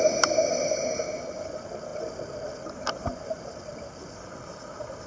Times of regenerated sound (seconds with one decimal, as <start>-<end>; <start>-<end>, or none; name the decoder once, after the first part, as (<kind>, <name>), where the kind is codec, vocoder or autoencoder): none